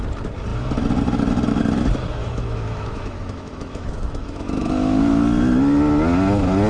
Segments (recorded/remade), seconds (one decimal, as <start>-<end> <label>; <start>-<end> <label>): 0.0-2.2 recorded; 2.2-5.2 remade; 5.2-6.7 recorded